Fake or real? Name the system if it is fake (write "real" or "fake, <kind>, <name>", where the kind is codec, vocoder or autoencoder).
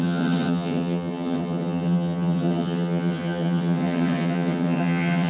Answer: fake, vocoder, HiFi-GAN